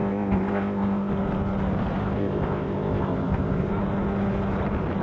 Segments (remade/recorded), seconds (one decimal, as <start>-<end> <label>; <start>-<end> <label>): 0.0-1.1 remade; 1.1-2.0 recorded; 2.0-3.7 remade; 3.7-5.0 recorded